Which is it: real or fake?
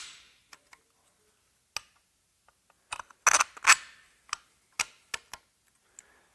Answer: real